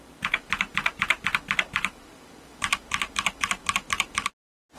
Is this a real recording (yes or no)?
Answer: yes